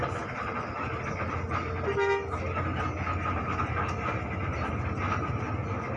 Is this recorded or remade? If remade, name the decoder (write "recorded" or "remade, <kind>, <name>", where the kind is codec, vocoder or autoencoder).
recorded